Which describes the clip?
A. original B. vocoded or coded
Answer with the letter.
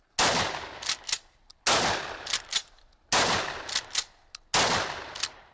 A